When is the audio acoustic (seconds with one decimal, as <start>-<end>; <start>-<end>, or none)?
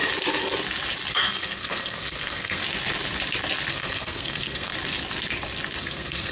0.0-1.1; 2.6-3.7; 4.7-5.8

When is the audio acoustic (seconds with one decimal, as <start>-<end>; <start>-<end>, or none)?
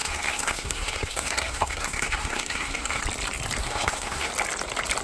3.0-3.6; 4.3-5.0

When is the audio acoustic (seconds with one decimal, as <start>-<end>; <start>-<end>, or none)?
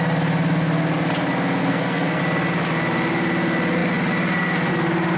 0.0-1.6; 2.2-5.2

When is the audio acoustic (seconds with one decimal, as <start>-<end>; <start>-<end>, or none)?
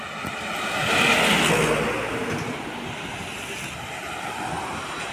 0.0-5.1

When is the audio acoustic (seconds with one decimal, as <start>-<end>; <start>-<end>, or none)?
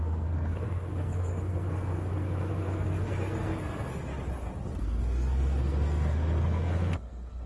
4.1-4.8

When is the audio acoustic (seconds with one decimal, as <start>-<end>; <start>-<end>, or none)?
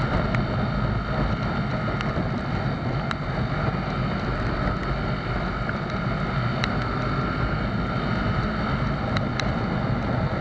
0.0-10.4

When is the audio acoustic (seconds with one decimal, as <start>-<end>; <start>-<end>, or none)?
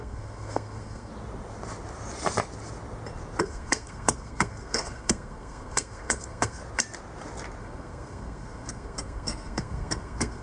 1.1-3.4; 6.6-7.6